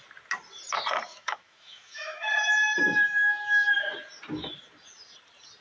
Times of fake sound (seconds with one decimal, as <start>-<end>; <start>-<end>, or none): 1.1-3.7